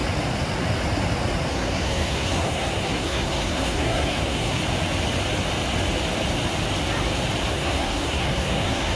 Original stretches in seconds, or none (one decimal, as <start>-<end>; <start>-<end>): 0.0-1.5; 4.6-7.5